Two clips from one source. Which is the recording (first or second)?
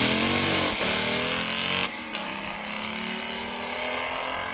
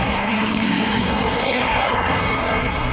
first